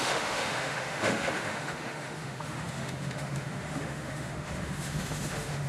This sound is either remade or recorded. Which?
remade